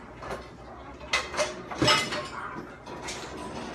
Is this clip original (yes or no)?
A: yes